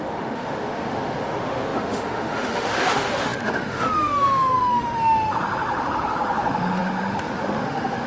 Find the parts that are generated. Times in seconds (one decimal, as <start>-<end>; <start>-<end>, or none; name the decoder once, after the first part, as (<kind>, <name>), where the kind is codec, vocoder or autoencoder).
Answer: 0.0-8.1 (autoencoder, DAC-VAE)